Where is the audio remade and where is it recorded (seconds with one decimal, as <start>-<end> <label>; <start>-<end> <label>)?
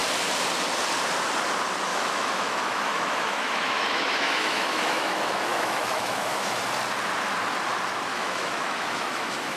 0.0-1.9 recorded; 1.9-6.6 remade; 6.6-8.1 recorded; 8.1-9.6 remade